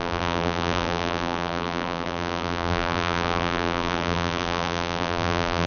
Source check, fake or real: fake